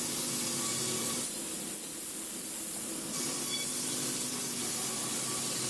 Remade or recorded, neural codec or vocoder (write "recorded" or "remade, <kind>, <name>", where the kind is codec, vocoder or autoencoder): recorded